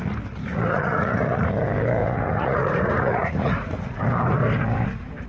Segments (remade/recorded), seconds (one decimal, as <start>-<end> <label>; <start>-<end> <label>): 0.0-0.5 recorded; 0.5-1.5 remade; 1.5-2.0 recorded; 2.0-4.0 remade; 4.0-5.3 recorded